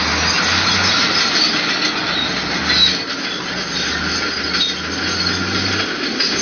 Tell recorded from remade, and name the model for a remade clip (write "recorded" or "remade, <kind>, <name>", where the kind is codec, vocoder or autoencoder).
recorded